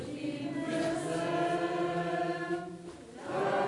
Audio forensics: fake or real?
real